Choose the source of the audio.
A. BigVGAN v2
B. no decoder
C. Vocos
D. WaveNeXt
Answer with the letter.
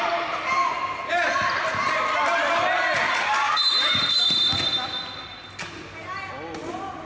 B